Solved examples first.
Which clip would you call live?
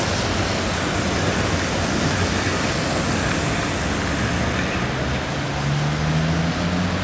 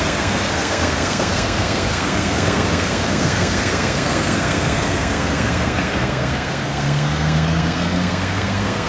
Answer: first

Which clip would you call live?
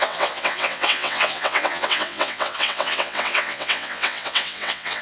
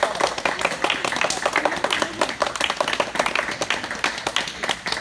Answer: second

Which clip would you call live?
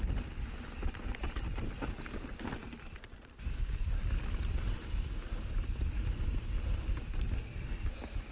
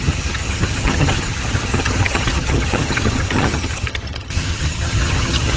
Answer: first